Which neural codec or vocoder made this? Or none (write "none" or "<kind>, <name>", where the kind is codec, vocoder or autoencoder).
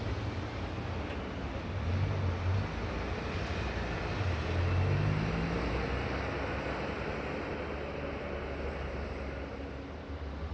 none